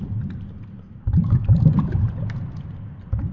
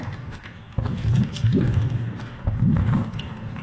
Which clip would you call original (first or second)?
first